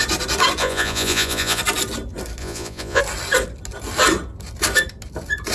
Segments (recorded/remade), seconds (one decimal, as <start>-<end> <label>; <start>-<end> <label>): 0.0-0.6 recorded; 0.6-1.6 remade; 1.6-2.4 recorded; 2.4-3.0 remade; 3.0-5.5 recorded